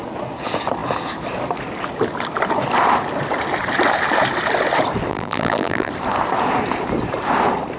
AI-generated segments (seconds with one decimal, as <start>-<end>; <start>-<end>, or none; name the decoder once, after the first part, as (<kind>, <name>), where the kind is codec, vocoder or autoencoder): 5.1-5.9 (vocoder, BigVGAN v2)